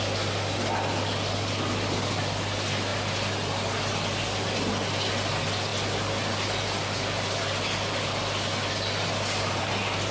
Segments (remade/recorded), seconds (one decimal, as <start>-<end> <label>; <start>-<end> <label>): 0.0-10.1 recorded